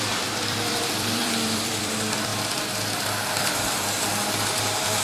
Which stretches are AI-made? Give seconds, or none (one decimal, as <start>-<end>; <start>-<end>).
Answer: 0.0-2.3; 3.4-4.1; 4.6-5.0